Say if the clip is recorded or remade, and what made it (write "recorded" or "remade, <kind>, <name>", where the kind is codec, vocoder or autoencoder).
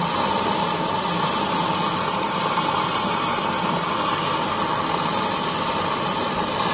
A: recorded